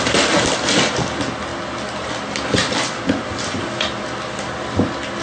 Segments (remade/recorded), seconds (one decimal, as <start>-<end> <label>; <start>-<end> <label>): 0.0-5.2 recorded